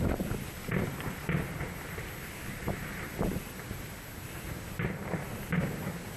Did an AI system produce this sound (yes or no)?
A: no